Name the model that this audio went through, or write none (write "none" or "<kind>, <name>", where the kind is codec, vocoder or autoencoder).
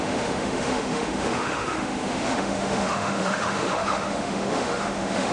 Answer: autoencoder, DAC-VAE